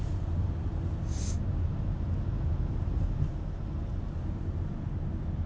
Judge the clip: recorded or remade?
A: recorded